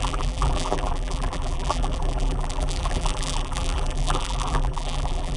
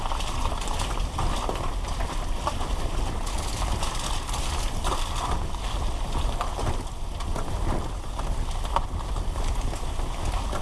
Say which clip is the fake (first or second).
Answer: first